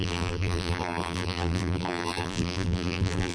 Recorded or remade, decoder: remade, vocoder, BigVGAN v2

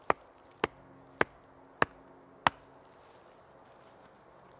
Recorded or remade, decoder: recorded